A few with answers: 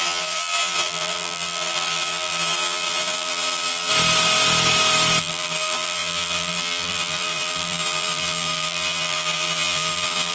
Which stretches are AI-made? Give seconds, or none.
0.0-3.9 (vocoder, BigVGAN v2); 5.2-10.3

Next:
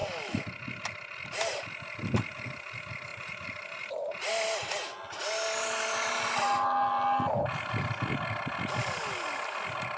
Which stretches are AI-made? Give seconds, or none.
3.1-4.3 (vocoder, BigVGAN v2)